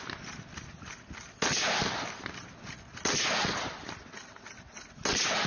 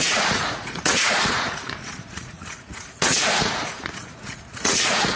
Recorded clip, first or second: first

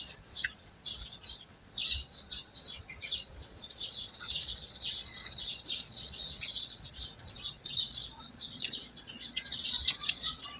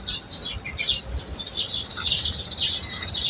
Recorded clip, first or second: second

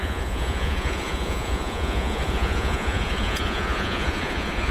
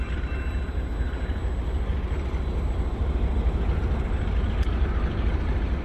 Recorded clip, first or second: second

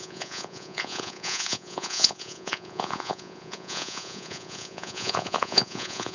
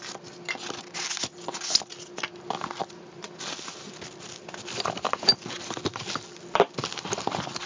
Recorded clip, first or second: second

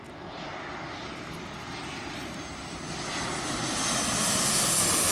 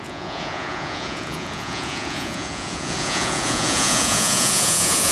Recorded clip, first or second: first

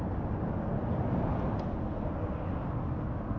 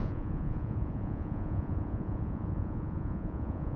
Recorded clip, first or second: first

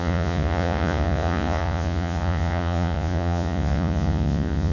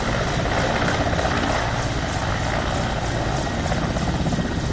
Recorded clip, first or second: second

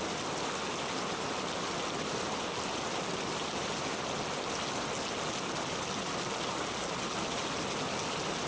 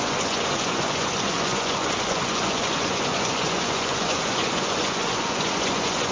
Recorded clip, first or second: first